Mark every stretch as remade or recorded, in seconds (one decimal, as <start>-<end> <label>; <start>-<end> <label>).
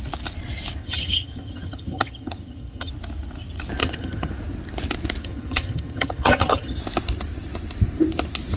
0.0-0.8 recorded; 0.8-2.9 remade; 2.9-3.8 recorded; 3.8-4.3 remade; 4.3-5.2 recorded; 5.2-6.8 remade; 6.8-8.6 recorded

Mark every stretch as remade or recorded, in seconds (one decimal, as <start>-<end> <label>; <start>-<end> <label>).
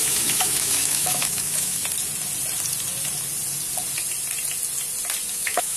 0.0-1.8 remade; 1.8-5.3 recorded; 5.3-5.8 remade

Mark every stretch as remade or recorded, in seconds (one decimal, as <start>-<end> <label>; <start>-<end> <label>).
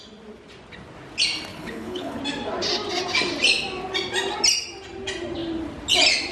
0.0-1.5 recorded; 1.5-2.2 remade; 2.2-6.3 recorded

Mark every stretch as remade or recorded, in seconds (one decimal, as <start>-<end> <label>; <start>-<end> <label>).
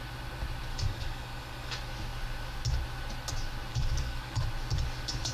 0.0-0.7 recorded; 0.7-1.7 remade; 1.7-3.7 recorded; 3.7-4.4 remade; 4.4-5.3 recorded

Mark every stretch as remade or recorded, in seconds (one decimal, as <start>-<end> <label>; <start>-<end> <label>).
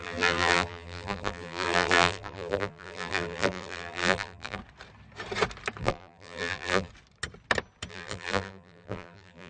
0.0-4.6 remade; 4.6-5.8 recorded; 5.8-6.9 remade; 6.9-7.9 recorded; 7.9-9.5 remade